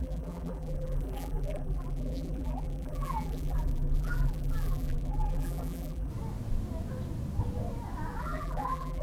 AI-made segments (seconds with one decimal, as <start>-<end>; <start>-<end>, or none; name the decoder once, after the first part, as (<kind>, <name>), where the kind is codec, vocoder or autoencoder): 0.0-6.1 (vocoder, BigVGAN v2); 8.2-9.0